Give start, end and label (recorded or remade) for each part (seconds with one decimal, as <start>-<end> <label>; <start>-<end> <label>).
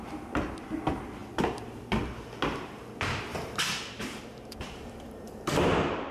0.0-3.3 recorded; 3.3-6.1 remade